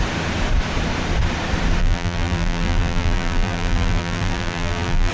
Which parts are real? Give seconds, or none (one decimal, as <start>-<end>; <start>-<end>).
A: 0.0-1.8